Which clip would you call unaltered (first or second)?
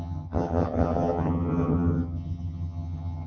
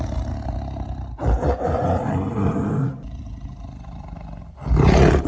second